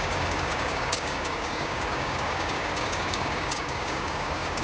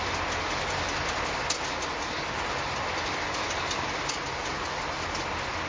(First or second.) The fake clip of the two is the first